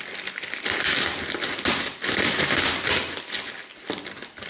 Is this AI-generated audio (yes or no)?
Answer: no